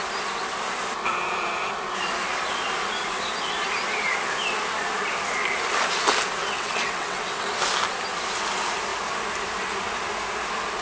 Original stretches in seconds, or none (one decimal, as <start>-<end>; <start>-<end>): 0.0-6.4; 7.5-10.8